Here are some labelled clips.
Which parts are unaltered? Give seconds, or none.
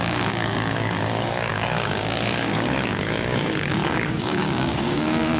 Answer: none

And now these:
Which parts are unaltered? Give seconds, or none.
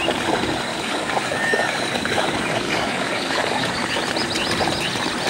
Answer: 0.0-0.7; 3.9-5.3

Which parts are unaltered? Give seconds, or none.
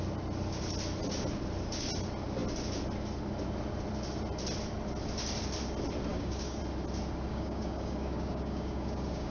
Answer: 0.0-6.1; 6.6-7.3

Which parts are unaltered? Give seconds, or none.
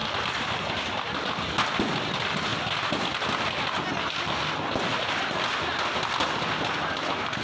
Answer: 0.0-7.4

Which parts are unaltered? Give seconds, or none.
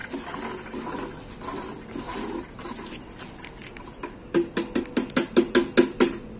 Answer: 0.0-6.4